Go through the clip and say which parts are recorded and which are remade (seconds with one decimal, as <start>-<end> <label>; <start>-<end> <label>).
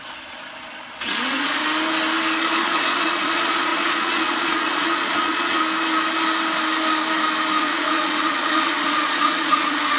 0.0-1.6 remade; 1.6-2.6 recorded; 2.6-5.6 remade; 5.6-7.6 recorded; 7.6-10.0 remade